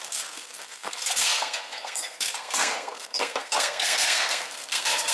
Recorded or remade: remade